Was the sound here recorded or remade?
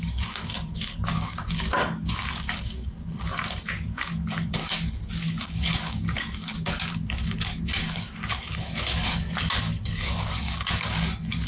remade